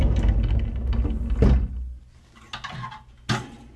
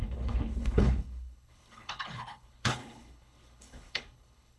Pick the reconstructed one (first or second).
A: second